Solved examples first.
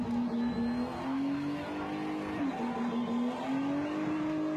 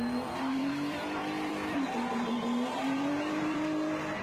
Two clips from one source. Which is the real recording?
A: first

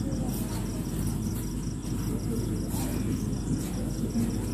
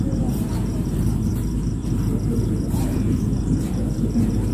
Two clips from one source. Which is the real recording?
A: first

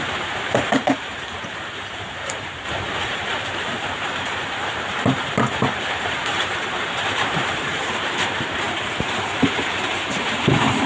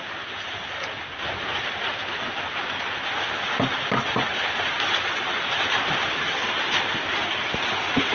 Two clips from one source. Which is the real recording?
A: second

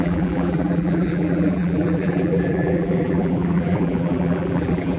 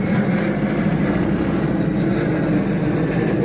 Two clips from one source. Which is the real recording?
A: second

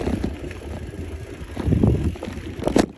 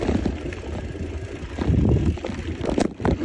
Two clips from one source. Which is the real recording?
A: second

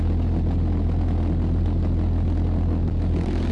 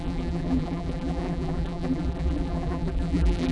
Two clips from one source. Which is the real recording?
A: first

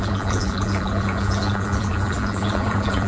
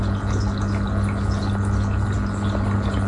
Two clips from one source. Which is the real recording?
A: second